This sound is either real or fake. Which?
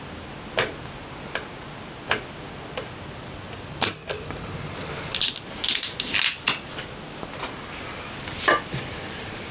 real